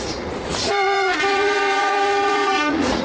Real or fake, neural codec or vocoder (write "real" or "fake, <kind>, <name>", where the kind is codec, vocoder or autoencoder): fake, vocoder, Vocos